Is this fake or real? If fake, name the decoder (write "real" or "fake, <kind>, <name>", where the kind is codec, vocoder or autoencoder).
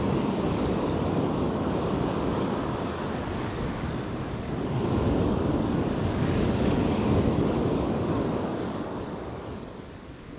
fake, codec, DAC